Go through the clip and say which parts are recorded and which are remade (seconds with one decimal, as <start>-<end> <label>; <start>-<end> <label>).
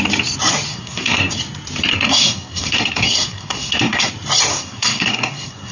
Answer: 0.0-0.7 recorded; 0.7-1.3 remade; 1.3-1.9 recorded; 1.9-4.1 remade; 4.1-4.5 recorded; 4.5-5.7 remade